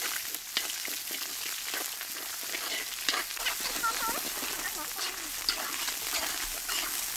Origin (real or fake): real